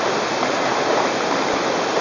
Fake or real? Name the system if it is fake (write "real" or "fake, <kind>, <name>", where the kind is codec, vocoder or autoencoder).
real